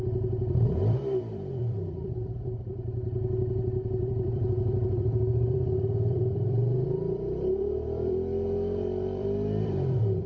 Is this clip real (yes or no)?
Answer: no